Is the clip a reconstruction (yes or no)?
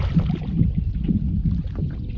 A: no